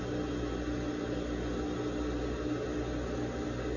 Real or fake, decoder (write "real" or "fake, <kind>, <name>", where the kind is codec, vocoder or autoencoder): real